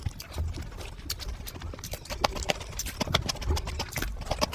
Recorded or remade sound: recorded